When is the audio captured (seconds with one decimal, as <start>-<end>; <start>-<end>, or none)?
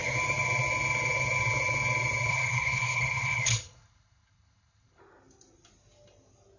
0.0-2.3; 5.0-6.6